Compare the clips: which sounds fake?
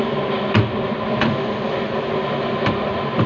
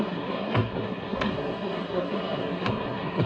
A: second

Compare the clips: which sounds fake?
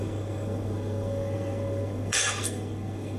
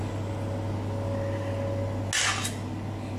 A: first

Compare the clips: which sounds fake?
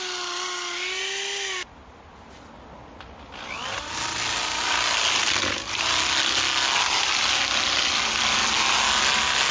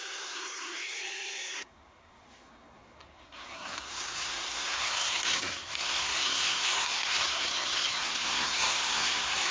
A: second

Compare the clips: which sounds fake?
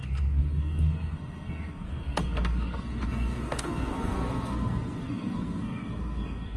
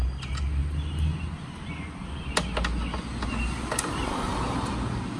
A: first